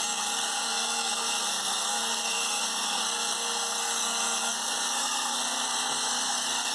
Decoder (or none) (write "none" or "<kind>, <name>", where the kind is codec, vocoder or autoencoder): codec, SNAC